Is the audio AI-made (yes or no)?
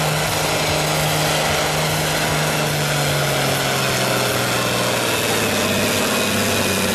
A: no